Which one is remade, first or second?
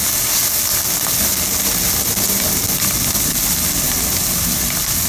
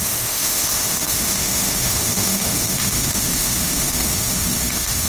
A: second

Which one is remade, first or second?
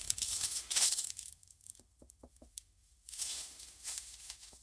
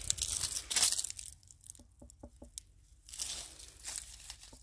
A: first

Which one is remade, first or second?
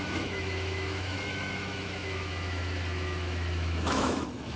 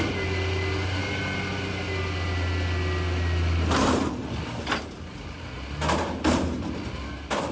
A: first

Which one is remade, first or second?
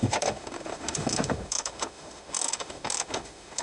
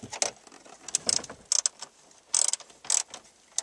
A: first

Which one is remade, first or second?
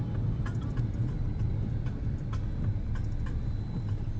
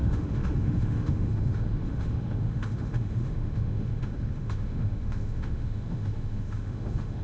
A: second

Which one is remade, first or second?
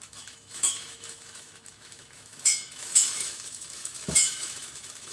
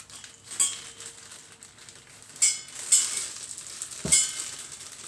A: first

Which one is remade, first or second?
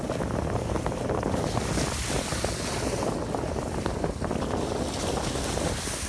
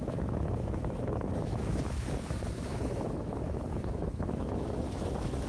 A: second